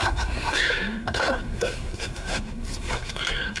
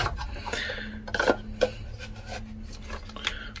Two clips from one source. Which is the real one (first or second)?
second